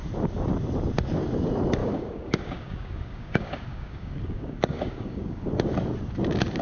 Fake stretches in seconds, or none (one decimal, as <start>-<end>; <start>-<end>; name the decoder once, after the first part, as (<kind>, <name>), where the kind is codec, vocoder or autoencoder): 1.8-5.5 (codec, DAC)